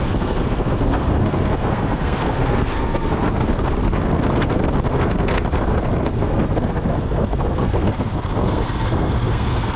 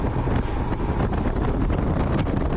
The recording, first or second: second